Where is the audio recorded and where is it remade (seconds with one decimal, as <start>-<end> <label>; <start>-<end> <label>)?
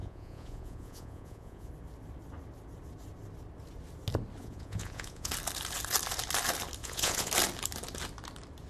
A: 0.0-1.7 remade; 1.7-4.4 recorded; 4.4-5.3 remade; 5.3-6.8 recorded; 6.8-7.3 remade; 7.3-8.7 recorded